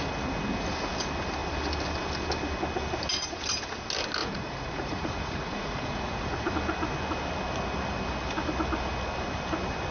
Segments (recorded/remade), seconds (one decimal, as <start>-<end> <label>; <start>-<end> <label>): 0.0-4.2 recorded; 4.2-6.5 remade; 6.5-9.9 recorded